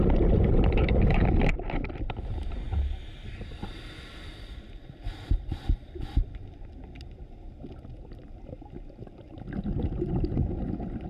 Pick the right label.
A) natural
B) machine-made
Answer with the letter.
A